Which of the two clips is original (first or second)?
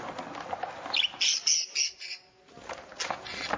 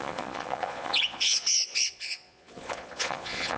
first